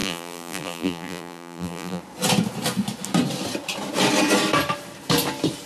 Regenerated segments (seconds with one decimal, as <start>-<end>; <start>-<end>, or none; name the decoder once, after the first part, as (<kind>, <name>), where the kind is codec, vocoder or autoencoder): 0.0-2.0 (vocoder, BigVGAN v2)